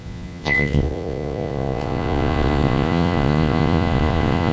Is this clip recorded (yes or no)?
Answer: no